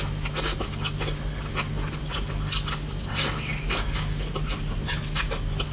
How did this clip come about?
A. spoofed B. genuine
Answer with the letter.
B